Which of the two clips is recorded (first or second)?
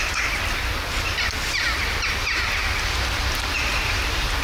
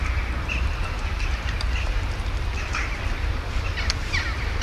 first